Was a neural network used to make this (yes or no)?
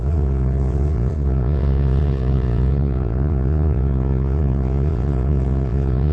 yes